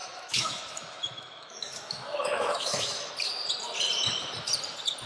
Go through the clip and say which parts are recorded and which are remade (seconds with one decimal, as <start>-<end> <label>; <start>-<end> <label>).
0.0-3.1 remade; 3.1-5.1 recorded

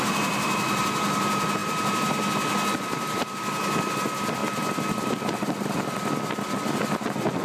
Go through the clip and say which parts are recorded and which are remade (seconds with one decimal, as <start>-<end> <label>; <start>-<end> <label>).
0.0-7.4 recorded

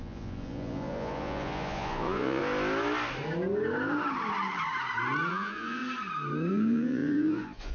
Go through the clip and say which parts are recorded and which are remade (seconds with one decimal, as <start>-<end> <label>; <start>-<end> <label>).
0.0-2.4 remade; 2.4-5.3 recorded; 5.3-5.8 remade; 5.8-6.5 recorded; 6.5-7.7 remade

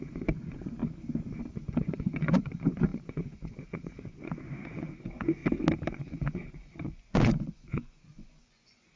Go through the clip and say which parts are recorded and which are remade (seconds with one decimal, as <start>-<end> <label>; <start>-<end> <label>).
0.0-0.8 remade; 0.8-1.5 recorded; 1.5-5.4 remade; 5.4-5.9 recorded; 5.9-9.0 remade

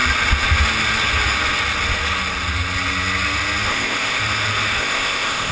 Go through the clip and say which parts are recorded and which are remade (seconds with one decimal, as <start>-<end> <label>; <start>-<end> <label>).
0.0-3.7 recorded; 3.7-4.2 remade; 4.2-4.8 recorded; 4.8-5.5 remade

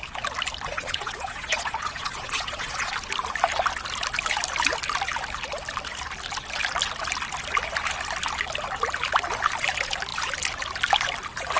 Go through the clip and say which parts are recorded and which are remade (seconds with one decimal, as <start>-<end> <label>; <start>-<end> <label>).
0.0-0.7 recorded; 0.7-2.9 remade; 2.9-11.6 recorded